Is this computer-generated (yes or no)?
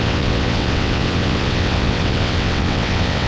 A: yes